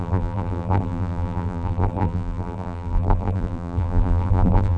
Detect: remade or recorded remade